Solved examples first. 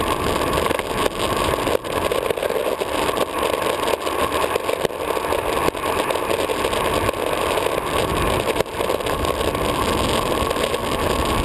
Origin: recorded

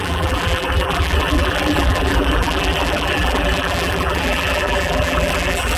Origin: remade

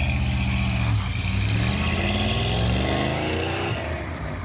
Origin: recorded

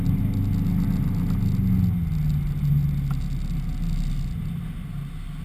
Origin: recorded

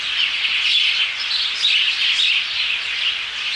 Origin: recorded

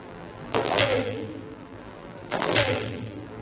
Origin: remade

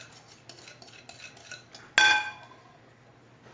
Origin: recorded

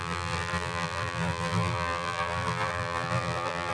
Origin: remade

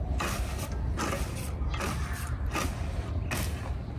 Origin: recorded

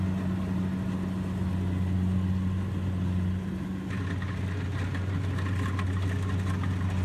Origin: recorded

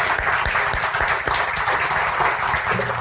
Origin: recorded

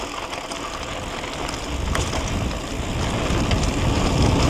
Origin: recorded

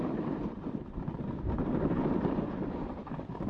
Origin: remade